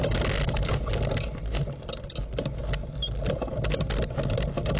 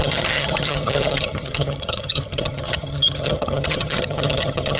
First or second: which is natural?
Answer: first